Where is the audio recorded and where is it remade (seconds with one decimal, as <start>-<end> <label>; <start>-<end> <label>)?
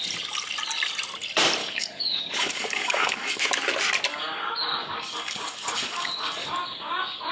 0.0-1.6 recorded; 1.6-3.4 remade; 3.4-4.1 recorded; 4.1-7.3 remade